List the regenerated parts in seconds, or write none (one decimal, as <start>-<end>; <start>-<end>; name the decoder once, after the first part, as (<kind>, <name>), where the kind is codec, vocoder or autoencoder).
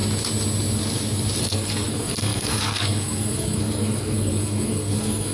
1.4-5.3 (codec, SNAC)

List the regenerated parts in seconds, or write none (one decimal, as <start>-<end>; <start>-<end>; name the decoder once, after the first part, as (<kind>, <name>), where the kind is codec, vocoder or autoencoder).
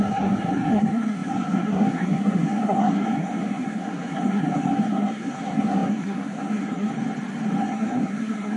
0.0-6.9 (codec, SNAC); 7.6-8.6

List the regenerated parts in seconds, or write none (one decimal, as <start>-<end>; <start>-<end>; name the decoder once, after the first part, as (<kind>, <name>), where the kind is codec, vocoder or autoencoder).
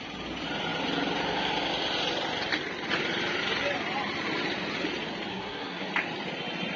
5.3-5.9 (codec, SNAC)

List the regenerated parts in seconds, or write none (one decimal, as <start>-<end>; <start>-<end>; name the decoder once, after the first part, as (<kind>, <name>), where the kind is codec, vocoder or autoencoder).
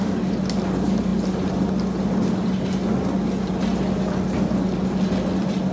none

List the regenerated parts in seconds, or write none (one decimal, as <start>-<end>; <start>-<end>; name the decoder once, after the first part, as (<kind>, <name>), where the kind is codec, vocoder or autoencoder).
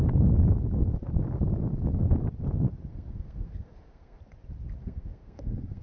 2.9-4.2 (codec, SNAC); 4.8-5.8